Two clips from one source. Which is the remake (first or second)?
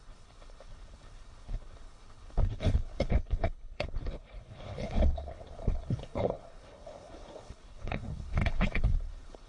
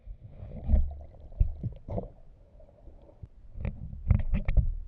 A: first